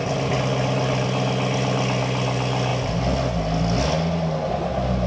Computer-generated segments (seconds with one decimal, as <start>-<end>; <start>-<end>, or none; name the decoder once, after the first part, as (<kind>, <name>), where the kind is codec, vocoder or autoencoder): none